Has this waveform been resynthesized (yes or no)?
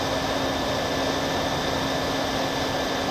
no